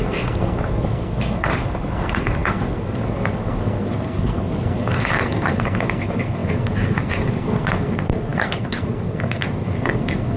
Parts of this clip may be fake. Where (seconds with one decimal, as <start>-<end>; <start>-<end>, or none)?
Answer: 0.0-10.4